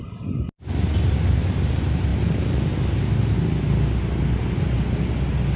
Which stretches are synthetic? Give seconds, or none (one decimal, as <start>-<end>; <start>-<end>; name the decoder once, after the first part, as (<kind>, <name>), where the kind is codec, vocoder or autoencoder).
none